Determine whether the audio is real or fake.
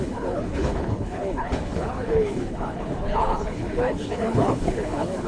fake